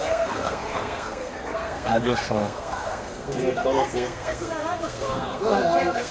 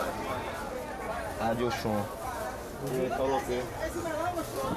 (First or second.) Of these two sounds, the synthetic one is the first